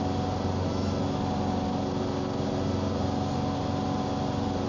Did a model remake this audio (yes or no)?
no